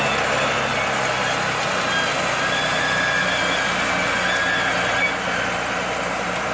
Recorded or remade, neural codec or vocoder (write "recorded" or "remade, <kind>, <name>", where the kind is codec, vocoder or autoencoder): recorded